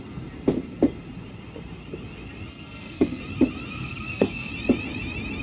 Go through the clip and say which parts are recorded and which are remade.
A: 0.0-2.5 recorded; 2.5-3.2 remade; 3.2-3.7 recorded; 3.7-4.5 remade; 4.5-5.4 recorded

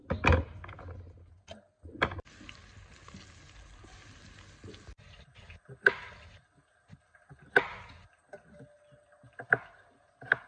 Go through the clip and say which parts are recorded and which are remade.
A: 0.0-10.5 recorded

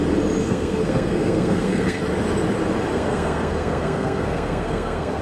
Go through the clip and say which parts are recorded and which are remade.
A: 0.0-0.4 recorded; 0.4-2.0 remade; 2.0-2.9 recorded; 2.9-5.2 remade

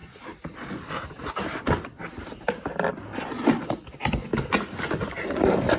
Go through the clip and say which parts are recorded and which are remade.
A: 0.0-5.8 recorded

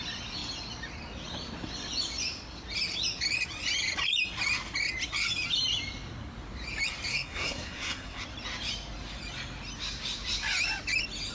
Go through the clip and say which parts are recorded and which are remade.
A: 0.0-7.1 recorded; 7.1-8.2 remade; 8.2-11.3 recorded